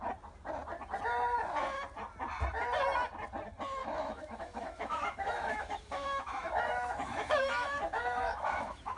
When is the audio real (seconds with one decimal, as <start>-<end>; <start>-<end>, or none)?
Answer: 0.0-3.8

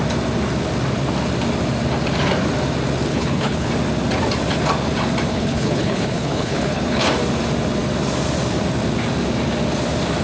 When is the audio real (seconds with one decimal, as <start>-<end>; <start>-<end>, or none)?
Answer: 0.0-3.1; 3.7-5.3; 7.1-10.2

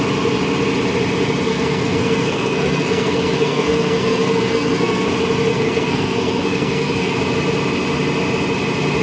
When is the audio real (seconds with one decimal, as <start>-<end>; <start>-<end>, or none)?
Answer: 0.0-1.5; 5.1-5.5; 7.2-9.0

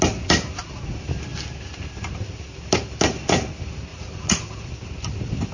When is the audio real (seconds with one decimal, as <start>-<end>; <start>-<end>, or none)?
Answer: 0.0-3.9; 4.7-5.5